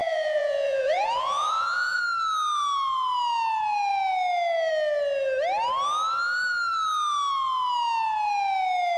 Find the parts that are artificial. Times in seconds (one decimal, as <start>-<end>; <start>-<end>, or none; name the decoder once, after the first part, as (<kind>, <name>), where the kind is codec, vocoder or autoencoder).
0.0-2.0 (vocoder, Vocos)